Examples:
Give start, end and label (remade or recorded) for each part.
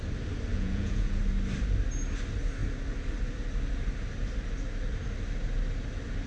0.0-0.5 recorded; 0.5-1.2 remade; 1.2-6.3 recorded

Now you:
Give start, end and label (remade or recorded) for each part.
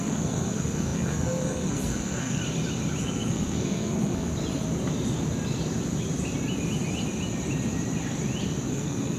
0.0-2.4 remade; 2.4-3.0 recorded; 3.0-4.3 remade; 4.3-8.7 recorded; 8.7-9.2 remade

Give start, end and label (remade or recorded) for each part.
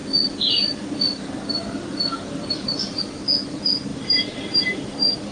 0.0-3.9 recorded; 3.9-5.3 remade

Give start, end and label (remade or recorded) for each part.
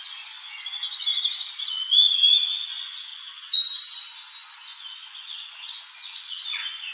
0.0-1.1 remade; 1.1-1.6 recorded; 1.6-6.9 remade